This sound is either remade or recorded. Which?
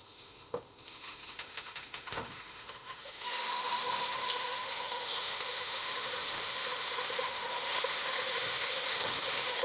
remade